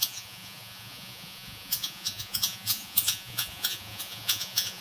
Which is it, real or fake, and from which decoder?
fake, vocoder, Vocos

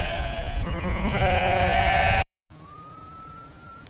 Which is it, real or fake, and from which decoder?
fake, vocoder, Vocos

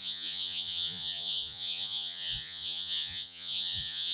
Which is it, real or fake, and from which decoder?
fake, vocoder, Vocos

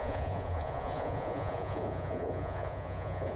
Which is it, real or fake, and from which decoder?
fake, vocoder, Vocos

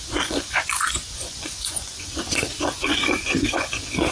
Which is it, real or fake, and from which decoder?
fake, vocoder, Vocos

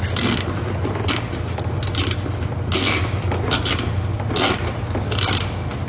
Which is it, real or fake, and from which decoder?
real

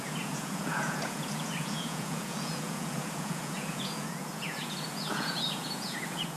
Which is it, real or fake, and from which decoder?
fake, vocoder, Vocos